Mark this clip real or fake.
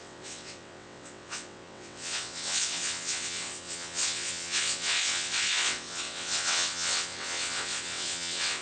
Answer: fake